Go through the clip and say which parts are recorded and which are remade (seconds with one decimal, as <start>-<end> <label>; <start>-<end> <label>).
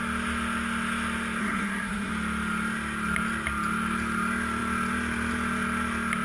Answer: 0.0-1.4 recorded; 1.4-2.1 remade; 2.1-6.2 recorded